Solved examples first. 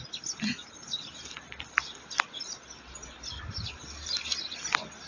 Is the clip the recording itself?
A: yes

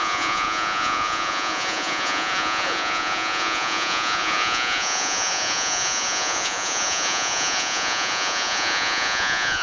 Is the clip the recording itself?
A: no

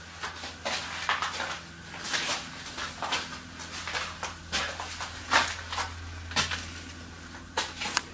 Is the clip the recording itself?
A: yes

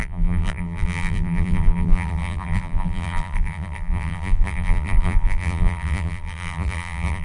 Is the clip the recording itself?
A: no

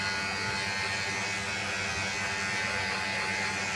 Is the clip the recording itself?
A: yes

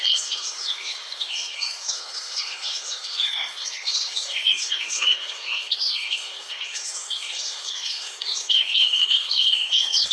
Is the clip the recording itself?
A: no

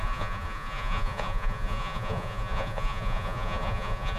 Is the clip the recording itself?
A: no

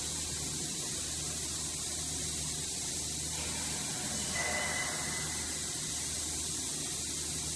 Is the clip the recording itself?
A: yes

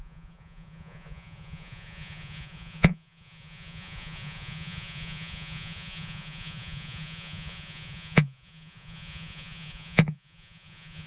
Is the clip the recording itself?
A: no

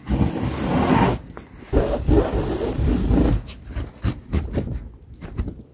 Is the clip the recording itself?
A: yes